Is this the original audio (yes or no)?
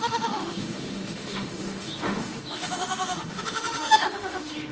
no